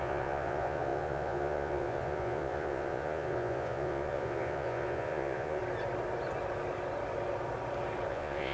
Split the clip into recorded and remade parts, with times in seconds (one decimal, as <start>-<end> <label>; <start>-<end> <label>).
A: 0.0-5.6 remade; 5.6-8.1 recorded; 8.1-8.5 remade